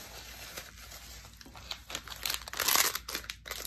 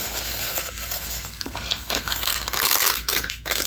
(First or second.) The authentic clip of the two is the first